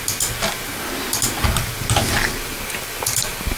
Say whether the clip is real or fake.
real